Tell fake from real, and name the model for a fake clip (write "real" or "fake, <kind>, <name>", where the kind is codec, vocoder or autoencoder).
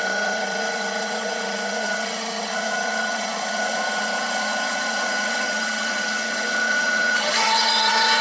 fake, vocoder, HiFi-GAN